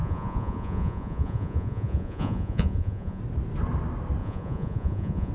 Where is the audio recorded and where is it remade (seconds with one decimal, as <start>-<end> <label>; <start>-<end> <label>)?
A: 0.0-3.2 remade; 3.2-4.2 recorded; 4.2-5.3 remade